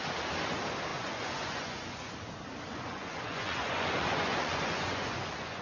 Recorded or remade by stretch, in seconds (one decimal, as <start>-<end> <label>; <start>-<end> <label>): 0.0-0.9 recorded; 0.9-2.1 remade; 2.1-2.7 recorded; 2.7-5.6 remade

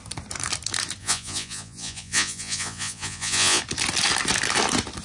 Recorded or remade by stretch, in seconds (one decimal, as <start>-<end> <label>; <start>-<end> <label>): 0.0-1.0 recorded; 1.0-3.6 remade; 3.6-5.0 recorded

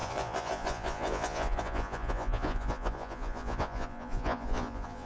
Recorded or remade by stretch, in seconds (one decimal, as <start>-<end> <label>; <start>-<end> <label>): 0.0-5.1 remade